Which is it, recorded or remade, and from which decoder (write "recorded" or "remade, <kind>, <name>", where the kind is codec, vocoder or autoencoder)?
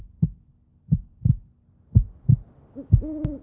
recorded